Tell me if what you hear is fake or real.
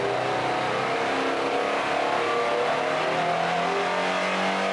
real